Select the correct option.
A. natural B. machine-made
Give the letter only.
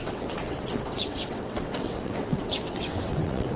B